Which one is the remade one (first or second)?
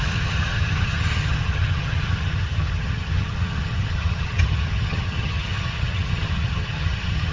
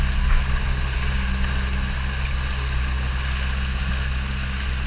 first